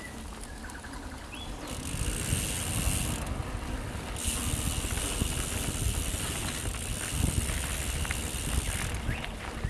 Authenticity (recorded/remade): recorded